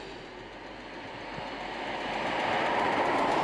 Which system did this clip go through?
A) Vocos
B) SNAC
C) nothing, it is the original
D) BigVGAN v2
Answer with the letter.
C